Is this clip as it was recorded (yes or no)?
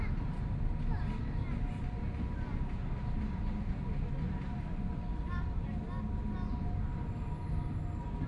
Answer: yes